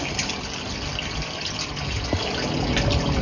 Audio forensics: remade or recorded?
recorded